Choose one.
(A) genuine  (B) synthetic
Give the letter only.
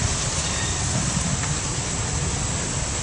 A